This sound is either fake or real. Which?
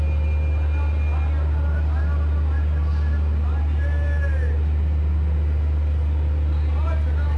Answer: real